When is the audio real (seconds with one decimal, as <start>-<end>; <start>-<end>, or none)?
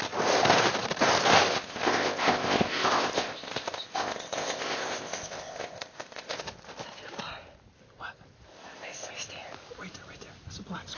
0.0-1.5; 6.4-8.5; 9.1-11.0